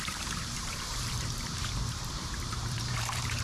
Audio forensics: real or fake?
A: fake